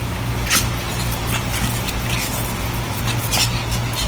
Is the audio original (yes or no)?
yes